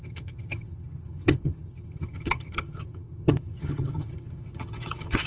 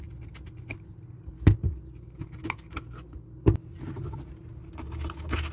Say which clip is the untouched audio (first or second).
second